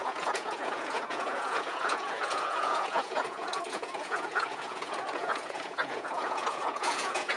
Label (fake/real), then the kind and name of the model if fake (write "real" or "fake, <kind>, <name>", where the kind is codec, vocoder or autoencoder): fake, vocoder, Vocos